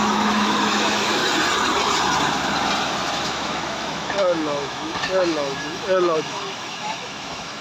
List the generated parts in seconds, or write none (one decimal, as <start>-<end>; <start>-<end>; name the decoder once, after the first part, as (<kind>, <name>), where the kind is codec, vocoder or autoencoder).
0.0-1.2 (autoencoder, DAC-VAE); 3.1-7.6